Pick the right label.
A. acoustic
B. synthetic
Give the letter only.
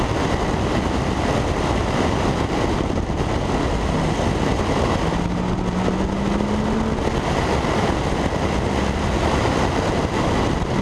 A